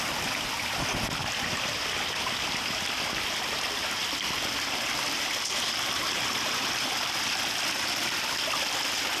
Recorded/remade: recorded